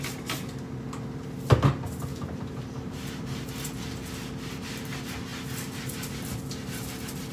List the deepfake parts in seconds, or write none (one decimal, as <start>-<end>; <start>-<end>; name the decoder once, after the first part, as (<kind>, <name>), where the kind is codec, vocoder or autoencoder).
2.1-3.5 (vocoder, BigVGAN v2)